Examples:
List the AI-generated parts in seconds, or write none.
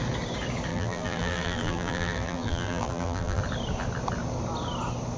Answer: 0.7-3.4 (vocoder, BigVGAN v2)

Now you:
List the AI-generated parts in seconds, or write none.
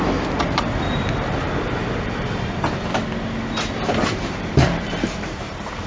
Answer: 0.0-3.0 (vocoder, BigVGAN v2); 4.1-5.9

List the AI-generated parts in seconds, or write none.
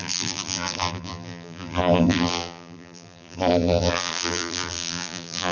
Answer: 0.0-5.5 (vocoder, BigVGAN v2)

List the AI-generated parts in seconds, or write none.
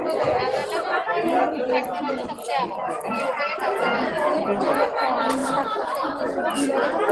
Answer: 5.4-6.1 (vocoder, BigVGAN v2)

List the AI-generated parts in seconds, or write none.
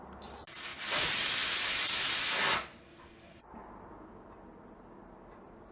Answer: none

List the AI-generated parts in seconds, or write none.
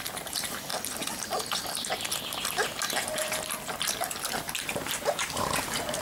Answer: 0.0-0.7 (vocoder, BigVGAN v2); 4.3-6.0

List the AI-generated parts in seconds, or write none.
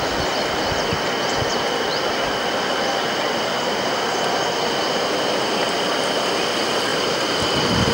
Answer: none